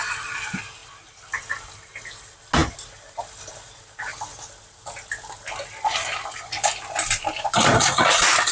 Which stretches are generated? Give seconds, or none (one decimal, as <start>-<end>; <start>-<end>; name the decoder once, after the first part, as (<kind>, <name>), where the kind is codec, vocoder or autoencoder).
none